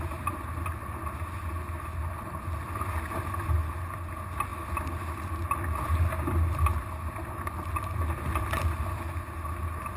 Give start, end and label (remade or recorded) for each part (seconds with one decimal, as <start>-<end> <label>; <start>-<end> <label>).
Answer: 0.0-10.0 recorded